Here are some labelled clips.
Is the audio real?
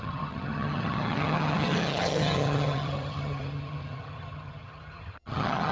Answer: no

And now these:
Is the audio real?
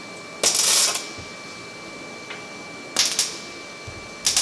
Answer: yes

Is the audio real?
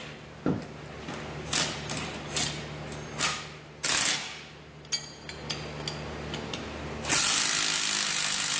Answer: yes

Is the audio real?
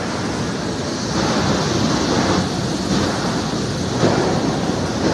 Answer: yes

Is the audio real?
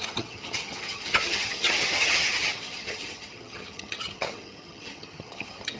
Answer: no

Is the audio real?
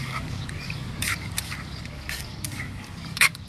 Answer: no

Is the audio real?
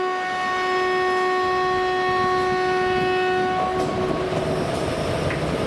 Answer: yes